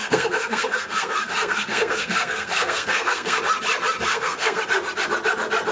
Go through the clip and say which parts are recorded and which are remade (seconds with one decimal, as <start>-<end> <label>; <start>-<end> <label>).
0.0-3.4 remade; 3.4-4.1 recorded; 4.1-4.6 remade; 4.6-5.7 recorded